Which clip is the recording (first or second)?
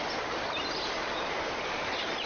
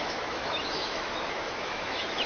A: first